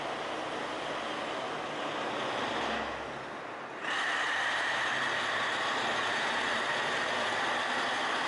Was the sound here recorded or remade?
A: recorded